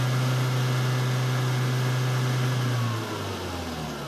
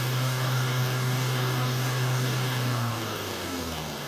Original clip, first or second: first